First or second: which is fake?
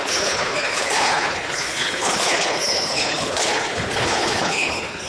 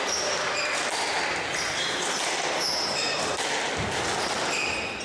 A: first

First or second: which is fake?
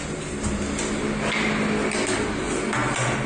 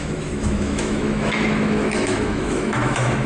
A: second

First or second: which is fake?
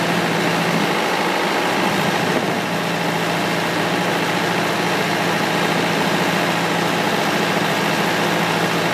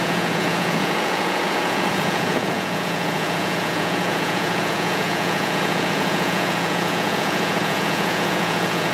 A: second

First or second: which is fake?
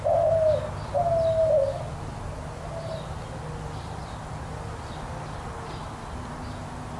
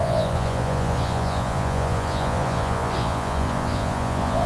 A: second